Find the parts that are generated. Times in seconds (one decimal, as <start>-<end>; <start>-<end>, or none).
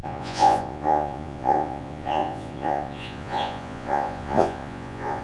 0.0-5.2